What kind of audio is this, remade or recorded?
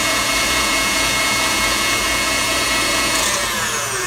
remade